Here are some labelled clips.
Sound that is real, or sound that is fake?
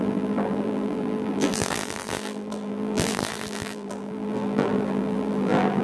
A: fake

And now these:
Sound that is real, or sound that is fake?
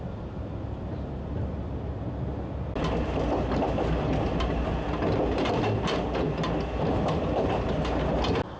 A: real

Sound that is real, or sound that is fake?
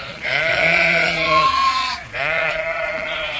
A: fake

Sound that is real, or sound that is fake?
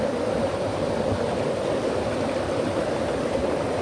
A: real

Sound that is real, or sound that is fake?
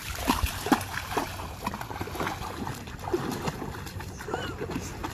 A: real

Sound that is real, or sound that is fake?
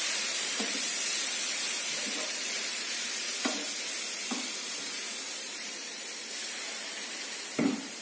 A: fake